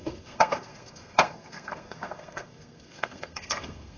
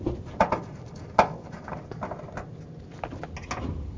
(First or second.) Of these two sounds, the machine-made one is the first